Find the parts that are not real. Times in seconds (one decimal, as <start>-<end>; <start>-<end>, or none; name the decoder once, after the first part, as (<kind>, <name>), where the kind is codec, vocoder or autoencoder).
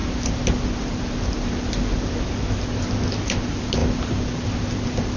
none